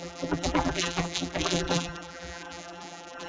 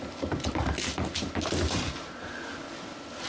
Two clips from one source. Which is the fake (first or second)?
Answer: first